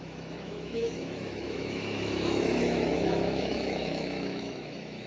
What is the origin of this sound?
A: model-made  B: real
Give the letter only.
A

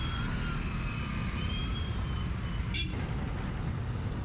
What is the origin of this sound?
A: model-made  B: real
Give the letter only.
B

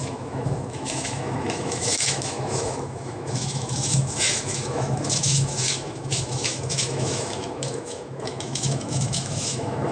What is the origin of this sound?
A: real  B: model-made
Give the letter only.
B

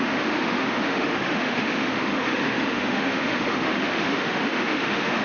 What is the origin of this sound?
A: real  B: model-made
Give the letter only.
B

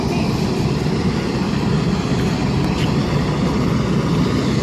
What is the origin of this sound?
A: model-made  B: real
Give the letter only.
B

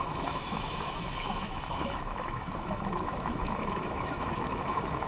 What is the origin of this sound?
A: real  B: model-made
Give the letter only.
B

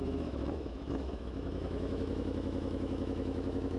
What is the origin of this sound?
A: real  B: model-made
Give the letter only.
B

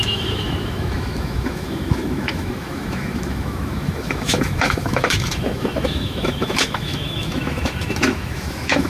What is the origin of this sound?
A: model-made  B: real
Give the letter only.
A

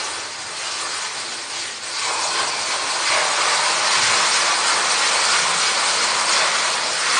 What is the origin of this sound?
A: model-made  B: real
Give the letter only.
B